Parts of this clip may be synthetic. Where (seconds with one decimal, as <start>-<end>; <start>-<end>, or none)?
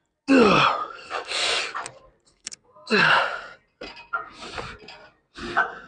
0.8-1.6; 2.3-3.1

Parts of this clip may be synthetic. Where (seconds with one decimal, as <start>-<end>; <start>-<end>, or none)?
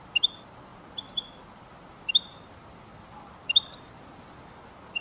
none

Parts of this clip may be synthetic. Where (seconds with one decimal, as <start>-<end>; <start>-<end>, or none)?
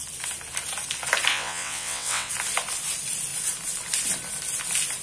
1.3-2.3